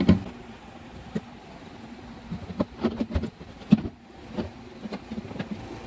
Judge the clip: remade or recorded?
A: recorded